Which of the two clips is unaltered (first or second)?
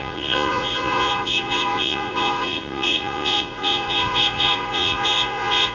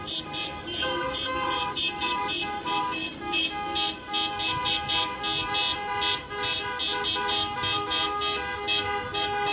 second